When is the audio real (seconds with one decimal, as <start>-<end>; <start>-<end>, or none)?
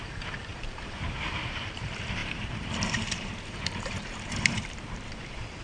0.0-0.5; 1.5-2.2; 5.1-5.6